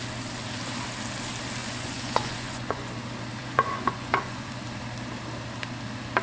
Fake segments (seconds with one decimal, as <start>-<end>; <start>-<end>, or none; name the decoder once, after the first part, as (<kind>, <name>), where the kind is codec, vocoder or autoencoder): 1.6-2.9 (vocoder, Vocos); 3.4-4.6